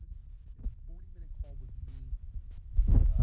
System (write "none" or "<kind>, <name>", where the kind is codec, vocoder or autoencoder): none